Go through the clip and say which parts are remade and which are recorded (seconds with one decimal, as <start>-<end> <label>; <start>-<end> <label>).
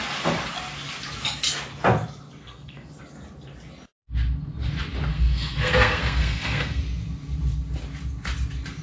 0.0-2.4 recorded; 2.4-2.9 remade; 2.9-5.1 recorded; 5.1-6.8 remade; 6.8-8.8 recorded